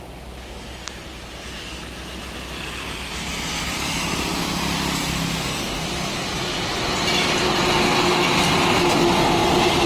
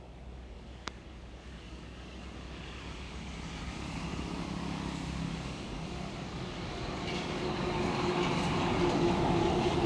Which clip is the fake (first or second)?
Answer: second